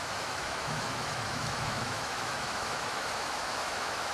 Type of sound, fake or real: fake